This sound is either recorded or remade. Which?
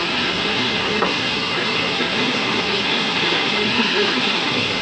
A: remade